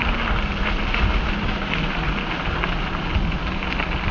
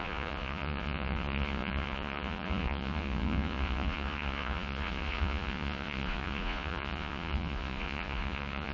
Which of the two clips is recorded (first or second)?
first